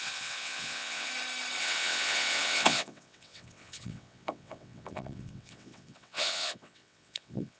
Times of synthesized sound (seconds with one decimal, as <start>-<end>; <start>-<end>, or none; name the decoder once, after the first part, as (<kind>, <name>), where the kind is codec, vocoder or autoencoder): 0.0-1.1 (vocoder, WaveNeXt); 1.6-7.6